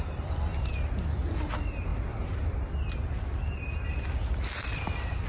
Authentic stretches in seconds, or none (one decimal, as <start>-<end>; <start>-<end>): 0.0-5.3